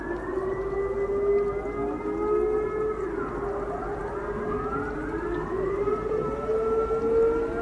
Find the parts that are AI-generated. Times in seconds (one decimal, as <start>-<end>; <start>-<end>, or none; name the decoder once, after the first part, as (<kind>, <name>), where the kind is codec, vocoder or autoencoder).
none